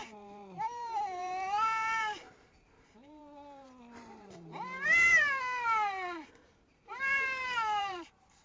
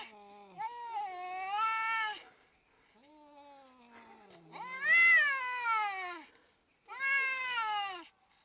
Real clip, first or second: second